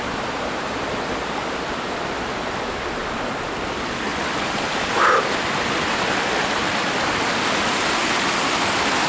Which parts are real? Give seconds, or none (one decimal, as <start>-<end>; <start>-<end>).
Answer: 0.0-4.1; 5.2-9.1

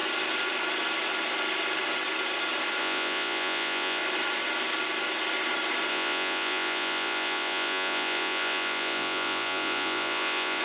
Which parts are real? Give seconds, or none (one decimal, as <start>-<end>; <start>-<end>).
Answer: 0.0-2.8; 4.0-5.9

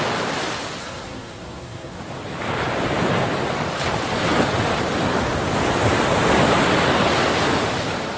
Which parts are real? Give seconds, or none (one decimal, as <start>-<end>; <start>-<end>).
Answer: 0.0-0.8; 2.0-8.2

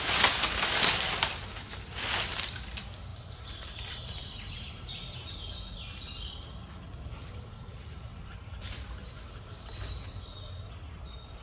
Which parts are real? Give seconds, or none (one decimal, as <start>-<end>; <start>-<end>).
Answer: 0.0-3.1; 4.7-8.1; 10.4-11.4

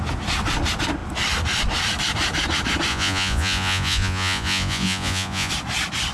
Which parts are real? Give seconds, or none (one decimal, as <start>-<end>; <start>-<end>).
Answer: 0.0-2.9; 5.5-6.1

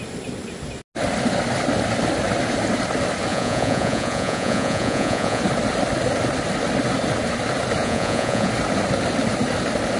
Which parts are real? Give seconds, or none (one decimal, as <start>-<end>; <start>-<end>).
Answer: 0.0-3.3; 5.4-7.8; 8.5-10.0

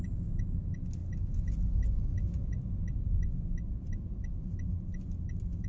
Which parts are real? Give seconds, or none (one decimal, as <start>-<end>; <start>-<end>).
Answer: 0.0-5.7